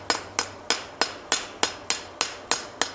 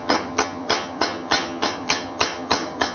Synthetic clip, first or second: second